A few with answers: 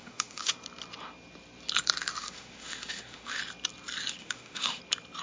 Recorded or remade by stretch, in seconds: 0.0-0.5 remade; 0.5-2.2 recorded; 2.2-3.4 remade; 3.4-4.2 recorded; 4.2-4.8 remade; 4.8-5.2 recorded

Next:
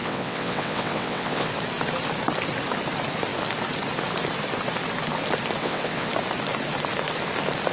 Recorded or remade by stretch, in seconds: 0.0-1.5 remade; 1.5-5.6 recorded; 5.6-6.1 remade; 6.1-7.7 recorded

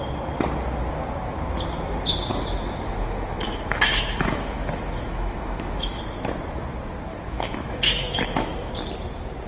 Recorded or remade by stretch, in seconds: 0.0-2.3 recorded; 2.3-6.0 remade; 6.0-7.1 recorded; 7.1-8.7 remade; 8.7-9.5 recorded

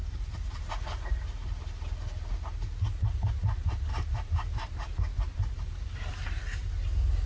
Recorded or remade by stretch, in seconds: 0.0-3.9 recorded; 3.9-6.4 remade; 6.4-7.3 recorded

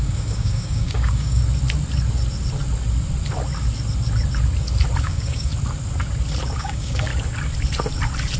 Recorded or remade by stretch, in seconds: 0.0-1.4 remade; 1.4-5.0 recorded; 5.0-5.5 remade; 5.5-6.6 recorded; 6.6-7.1 remade; 7.1-8.4 recorded